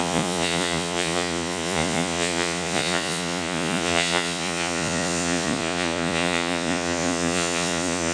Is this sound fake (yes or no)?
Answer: yes